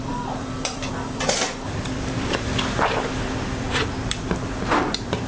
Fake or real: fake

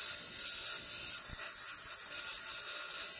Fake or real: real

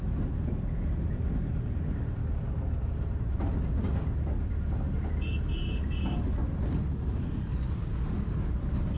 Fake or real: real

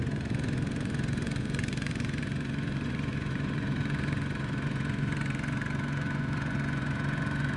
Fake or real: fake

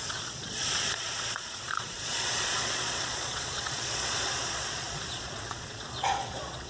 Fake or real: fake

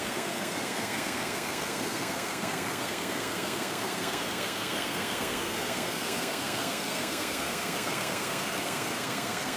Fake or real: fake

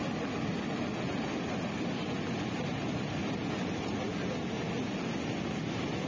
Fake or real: real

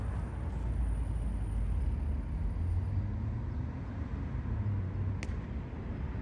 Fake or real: real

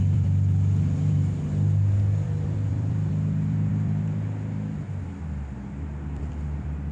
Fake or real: fake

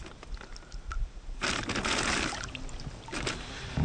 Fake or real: real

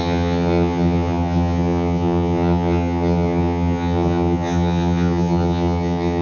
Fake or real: fake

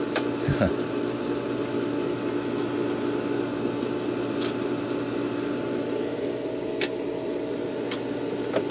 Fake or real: real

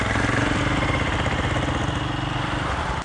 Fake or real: real